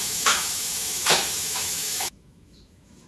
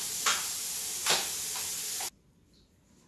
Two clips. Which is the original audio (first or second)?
second